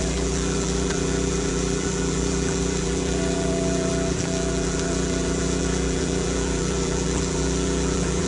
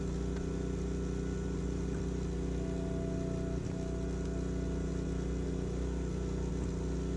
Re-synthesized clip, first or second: first